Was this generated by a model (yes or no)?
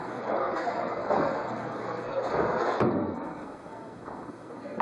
yes